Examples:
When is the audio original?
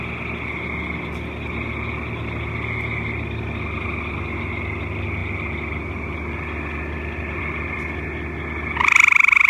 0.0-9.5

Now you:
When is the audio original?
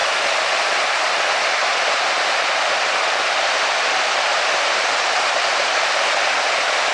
1.0-1.6; 5.7-6.9